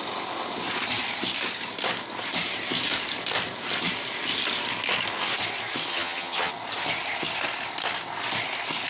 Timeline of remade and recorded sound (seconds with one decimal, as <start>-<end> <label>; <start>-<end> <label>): 0.0-5.9 recorded; 5.9-6.5 remade; 6.5-8.9 recorded